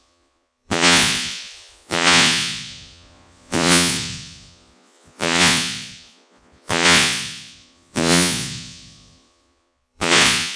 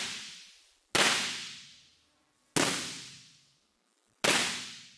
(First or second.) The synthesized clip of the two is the first